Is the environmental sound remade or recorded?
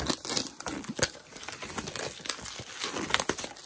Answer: recorded